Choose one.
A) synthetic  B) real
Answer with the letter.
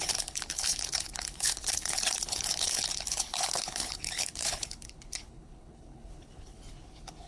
A